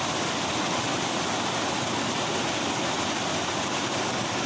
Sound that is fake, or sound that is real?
real